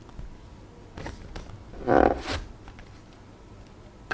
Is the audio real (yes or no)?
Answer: yes